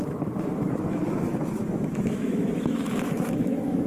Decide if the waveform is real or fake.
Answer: fake